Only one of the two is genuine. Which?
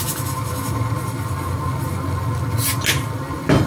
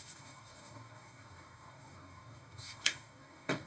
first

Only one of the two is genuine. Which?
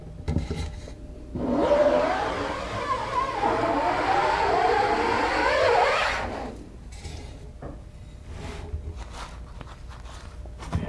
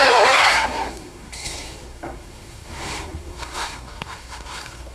first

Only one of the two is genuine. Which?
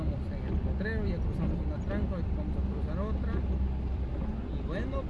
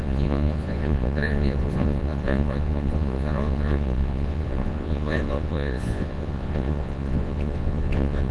first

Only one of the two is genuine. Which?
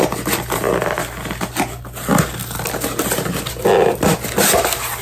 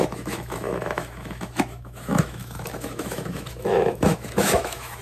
first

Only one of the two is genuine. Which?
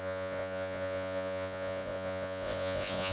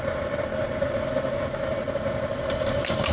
second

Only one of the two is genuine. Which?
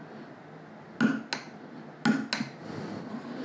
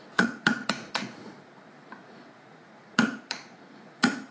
first